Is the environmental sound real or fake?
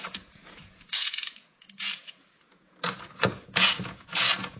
fake